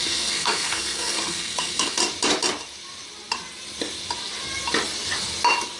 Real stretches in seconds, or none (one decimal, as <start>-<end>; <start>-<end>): 2.0-5.8